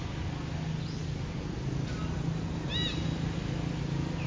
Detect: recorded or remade recorded